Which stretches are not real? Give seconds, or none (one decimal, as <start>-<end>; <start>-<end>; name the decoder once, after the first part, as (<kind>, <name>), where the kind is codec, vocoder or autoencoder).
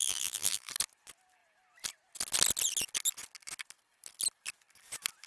0.0-0.7 (vocoder, BigVGAN v2)